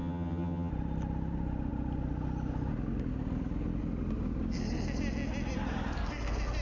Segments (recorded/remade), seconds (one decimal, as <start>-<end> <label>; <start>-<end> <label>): 0.0-0.7 remade; 0.7-6.6 recorded